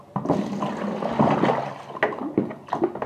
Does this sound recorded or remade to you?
recorded